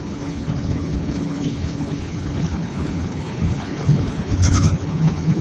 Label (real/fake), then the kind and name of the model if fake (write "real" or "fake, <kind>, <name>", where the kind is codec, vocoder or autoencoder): fake, codec, HILCodec